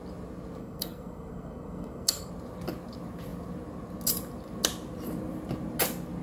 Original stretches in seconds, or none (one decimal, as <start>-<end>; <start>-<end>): 0.0-0.6; 2.3-6.2